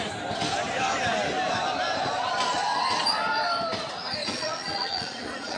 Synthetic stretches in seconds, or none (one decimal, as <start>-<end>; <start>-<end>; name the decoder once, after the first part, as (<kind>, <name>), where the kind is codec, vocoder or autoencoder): 4.2-5.6 (vocoder, Vocos)